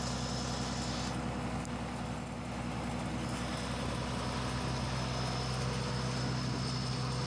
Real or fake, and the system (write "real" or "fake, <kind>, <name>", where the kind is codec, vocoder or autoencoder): real